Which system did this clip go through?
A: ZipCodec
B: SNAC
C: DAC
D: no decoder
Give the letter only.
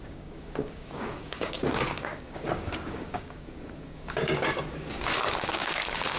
C